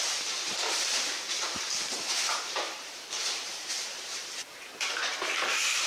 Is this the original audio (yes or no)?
no